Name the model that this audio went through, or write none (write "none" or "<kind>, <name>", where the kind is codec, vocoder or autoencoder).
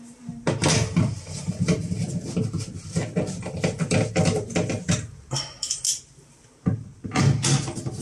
none